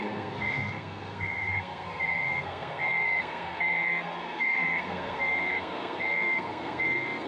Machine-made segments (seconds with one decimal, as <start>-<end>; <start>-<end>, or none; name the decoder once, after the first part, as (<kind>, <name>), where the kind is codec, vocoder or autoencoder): 0.0-7.3 (codec, SNAC)